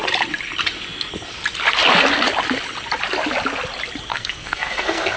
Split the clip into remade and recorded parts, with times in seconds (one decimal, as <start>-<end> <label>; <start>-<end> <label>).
0.0-4.1 recorded; 4.1-5.2 remade